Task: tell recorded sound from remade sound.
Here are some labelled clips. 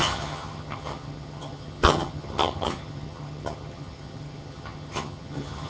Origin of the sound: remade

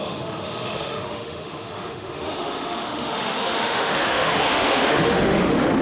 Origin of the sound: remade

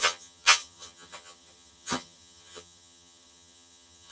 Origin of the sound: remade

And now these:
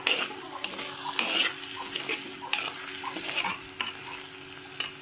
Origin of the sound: recorded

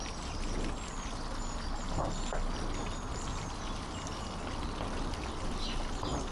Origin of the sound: recorded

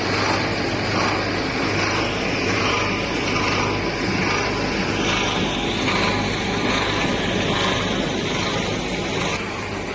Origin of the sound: recorded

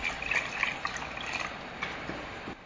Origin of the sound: recorded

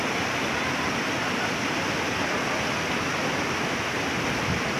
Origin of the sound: recorded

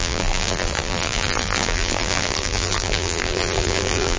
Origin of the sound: remade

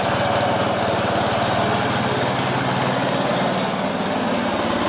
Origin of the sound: recorded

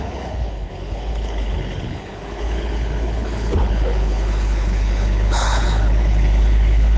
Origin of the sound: remade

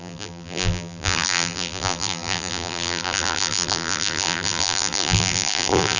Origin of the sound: remade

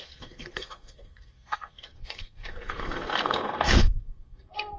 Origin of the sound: remade